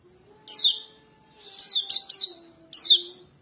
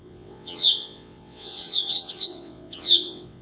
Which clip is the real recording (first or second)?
first